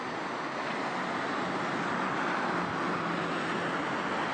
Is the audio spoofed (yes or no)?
no